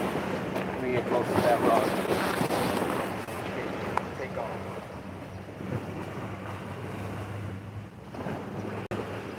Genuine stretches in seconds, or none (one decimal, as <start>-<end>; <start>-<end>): 0.0-9.4